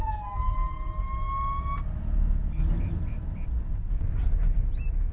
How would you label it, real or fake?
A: real